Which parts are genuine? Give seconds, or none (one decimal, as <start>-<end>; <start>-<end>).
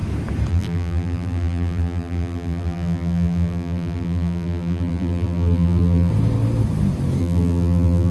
0.0-0.5; 6.1-7.2